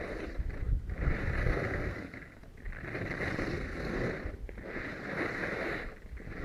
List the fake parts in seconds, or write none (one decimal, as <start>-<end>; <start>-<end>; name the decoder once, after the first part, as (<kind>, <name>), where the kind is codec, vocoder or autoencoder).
1.4-2.4 (codec, SNAC); 3.5-4.1